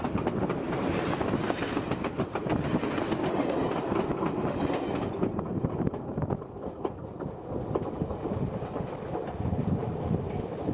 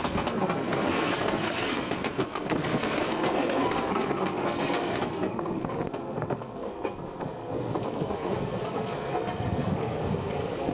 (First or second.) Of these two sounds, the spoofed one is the second